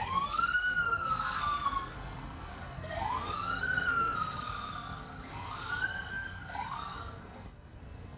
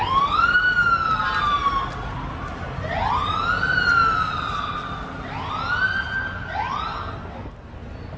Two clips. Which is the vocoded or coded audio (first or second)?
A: first